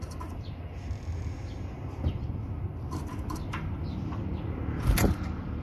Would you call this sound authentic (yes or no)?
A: yes